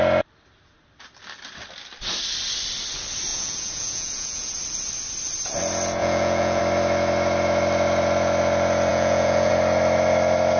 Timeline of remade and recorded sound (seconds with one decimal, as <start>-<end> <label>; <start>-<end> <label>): 0.0-3.3 recorded; 3.3-4.5 remade; 4.5-6.0 recorded; 6.0-6.6 remade; 6.6-8.9 recorded; 8.9-9.5 remade; 9.5-10.6 recorded